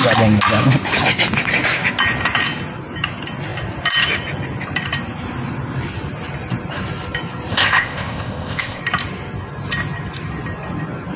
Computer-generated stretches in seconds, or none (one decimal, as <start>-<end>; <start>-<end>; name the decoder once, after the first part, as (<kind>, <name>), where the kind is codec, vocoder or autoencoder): 7.5-8.8 (codec, ZipCodec)